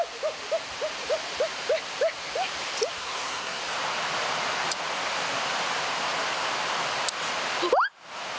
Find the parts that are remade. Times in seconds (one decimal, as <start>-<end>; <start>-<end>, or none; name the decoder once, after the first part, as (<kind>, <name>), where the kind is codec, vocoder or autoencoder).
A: 3.0-3.6 (codec, SNAC)